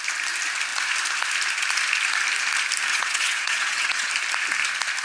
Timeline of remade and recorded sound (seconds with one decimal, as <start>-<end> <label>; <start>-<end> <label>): 0.0-2.9 recorded; 2.9-4.1 remade; 4.1-5.0 recorded